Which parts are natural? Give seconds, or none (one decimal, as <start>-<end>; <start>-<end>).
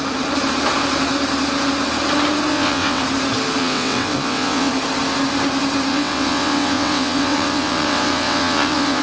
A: 0.0-2.5; 3.0-3.6; 4.7-5.9